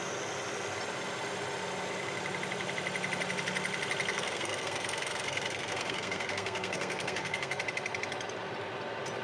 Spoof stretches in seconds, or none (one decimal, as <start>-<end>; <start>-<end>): 4.1-7.6